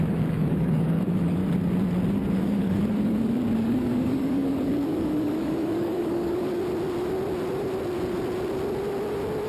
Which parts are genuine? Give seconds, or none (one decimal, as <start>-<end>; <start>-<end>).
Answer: 1.4-2.3; 6.6-9.5